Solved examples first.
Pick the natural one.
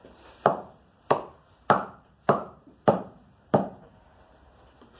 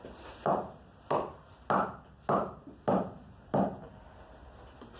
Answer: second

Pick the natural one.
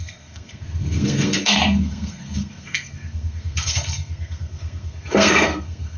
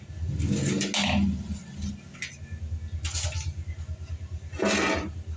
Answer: second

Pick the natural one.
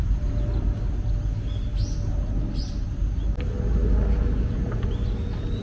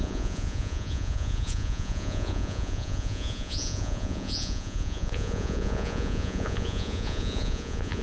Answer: first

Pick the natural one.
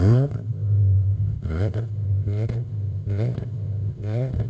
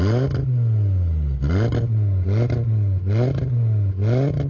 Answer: second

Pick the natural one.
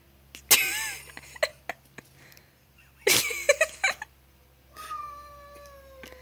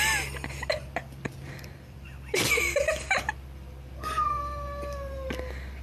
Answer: first